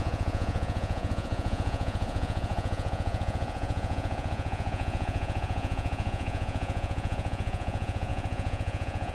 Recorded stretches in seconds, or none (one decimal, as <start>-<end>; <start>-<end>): none